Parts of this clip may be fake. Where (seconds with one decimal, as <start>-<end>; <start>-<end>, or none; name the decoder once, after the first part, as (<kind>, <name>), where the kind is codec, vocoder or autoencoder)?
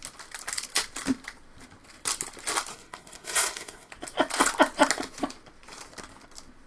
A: 2.7-3.9 (codec, SNAC)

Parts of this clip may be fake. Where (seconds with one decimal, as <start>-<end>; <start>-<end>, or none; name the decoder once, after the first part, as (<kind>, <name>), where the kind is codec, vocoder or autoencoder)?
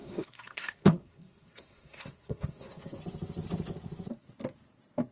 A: 0.0-3.0 (codec, SNAC)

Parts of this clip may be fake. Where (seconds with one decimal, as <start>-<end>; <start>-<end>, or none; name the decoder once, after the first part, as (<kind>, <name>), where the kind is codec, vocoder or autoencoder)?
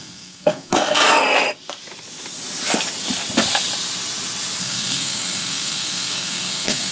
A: 0.0-1.0 (codec, SNAC); 4.6-6.9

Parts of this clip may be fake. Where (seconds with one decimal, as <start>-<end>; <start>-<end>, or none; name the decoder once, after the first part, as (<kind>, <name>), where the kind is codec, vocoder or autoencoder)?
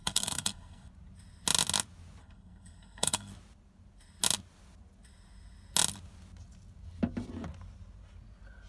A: 0.0-0.9 (codec, SNAC); 2.2-3.3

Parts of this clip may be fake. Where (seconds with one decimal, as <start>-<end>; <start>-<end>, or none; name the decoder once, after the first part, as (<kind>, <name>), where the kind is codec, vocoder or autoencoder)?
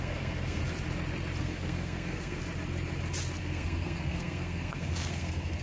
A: 0.0-0.6 (codec, SNAC); 1.4-2.4; 3.4-5.6